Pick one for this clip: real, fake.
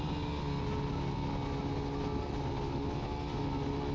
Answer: real